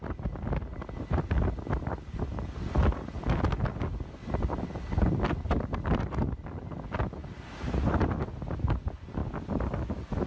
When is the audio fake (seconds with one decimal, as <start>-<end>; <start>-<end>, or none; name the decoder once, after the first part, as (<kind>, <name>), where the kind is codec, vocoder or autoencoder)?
7.2-7.9 (vocoder, BigVGAN v2)